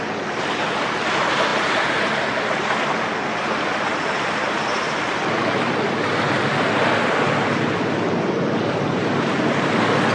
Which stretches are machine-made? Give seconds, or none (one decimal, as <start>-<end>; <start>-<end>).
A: none